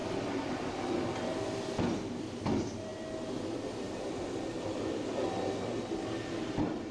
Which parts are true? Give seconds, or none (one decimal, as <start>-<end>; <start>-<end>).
0.0-6.9